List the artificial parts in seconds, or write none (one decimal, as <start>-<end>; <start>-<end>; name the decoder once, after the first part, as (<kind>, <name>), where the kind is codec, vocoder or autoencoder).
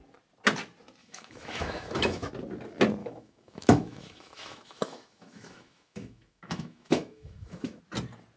1.0-2.3 (autoencoder, DAC-VAE); 3.0-7.8